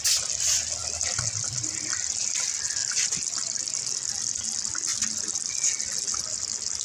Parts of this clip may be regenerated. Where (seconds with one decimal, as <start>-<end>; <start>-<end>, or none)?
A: 0.8-2.1; 2.8-3.8